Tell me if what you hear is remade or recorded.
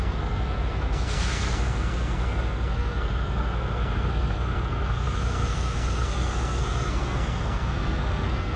remade